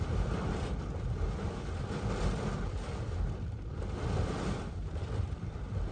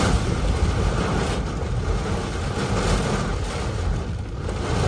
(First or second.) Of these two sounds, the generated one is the first